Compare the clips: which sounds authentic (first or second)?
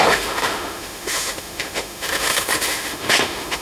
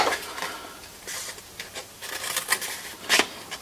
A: second